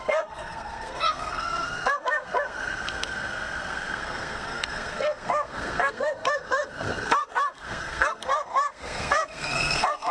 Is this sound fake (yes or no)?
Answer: yes